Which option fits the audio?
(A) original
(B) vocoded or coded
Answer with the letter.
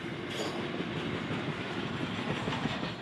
A